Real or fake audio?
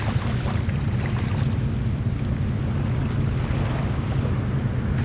real